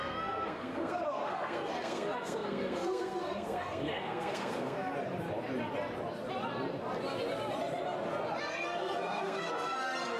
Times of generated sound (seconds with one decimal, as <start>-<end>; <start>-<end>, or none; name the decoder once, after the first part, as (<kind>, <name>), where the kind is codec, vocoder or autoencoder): 0.0-4.9 (codec, SNAC); 8.4-10.2